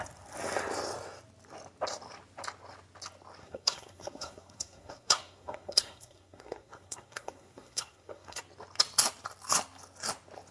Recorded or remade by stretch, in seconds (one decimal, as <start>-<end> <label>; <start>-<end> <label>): 0.0-3.4 recorded; 3.4-8.4 remade; 8.4-10.5 recorded